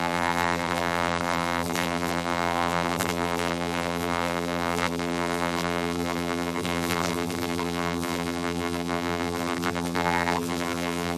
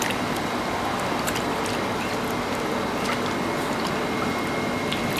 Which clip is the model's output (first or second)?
first